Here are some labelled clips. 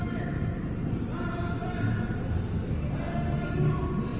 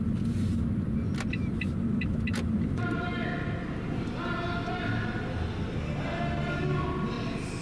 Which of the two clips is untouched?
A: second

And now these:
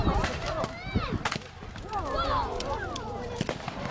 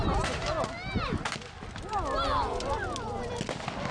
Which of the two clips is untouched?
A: second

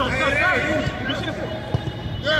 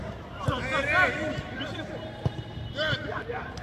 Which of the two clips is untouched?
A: second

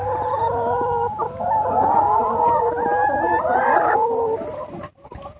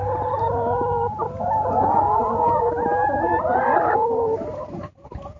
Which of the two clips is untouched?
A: first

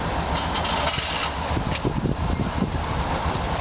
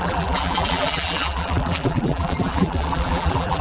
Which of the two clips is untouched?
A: first